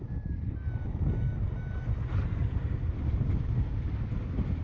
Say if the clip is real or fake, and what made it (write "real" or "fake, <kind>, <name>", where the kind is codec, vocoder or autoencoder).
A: real